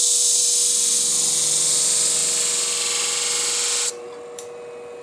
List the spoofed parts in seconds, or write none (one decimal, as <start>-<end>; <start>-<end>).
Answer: none